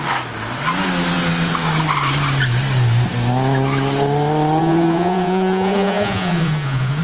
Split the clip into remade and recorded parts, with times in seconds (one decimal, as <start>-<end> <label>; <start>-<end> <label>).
0.0-4.6 recorded; 4.6-7.0 remade